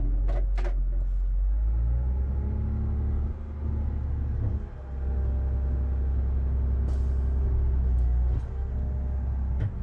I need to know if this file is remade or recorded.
recorded